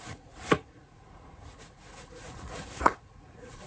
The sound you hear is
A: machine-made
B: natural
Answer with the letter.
A